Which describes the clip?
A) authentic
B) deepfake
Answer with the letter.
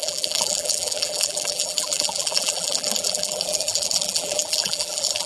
B